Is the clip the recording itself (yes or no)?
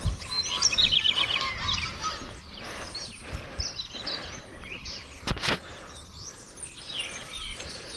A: yes